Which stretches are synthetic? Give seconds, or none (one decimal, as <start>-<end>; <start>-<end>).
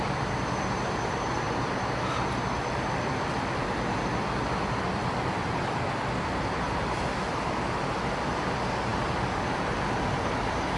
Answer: 0.0-10.8